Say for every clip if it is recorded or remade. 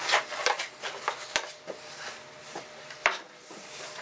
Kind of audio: remade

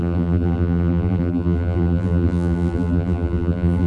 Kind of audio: remade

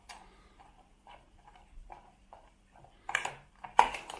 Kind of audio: remade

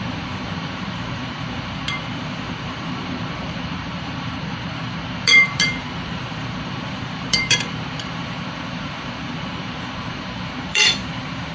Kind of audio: remade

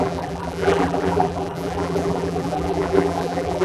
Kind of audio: remade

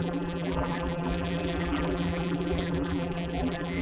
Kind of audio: remade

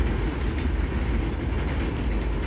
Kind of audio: recorded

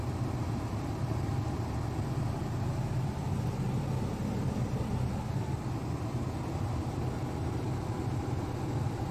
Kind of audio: recorded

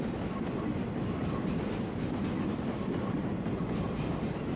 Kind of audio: recorded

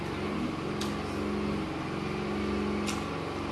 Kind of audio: recorded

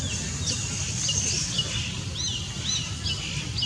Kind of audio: recorded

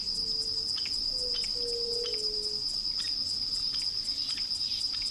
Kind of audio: recorded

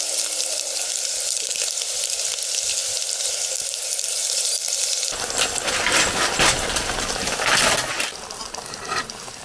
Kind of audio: recorded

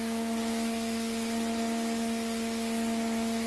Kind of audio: recorded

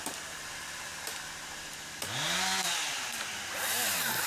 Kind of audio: recorded